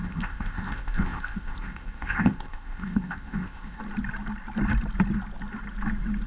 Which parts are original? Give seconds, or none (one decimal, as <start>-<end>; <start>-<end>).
3.8-6.3